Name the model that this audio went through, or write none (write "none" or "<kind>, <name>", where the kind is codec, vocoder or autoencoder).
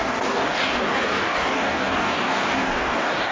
codec, DAC